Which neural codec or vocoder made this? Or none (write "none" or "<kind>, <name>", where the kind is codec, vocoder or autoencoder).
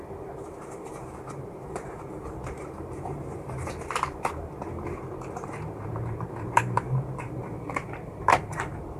vocoder, BigVGAN v2